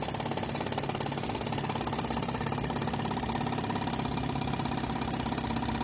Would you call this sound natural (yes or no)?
yes